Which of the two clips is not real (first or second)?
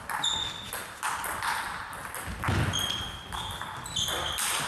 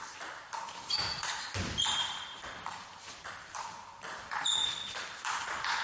second